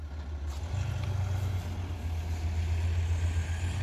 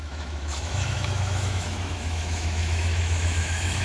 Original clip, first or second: first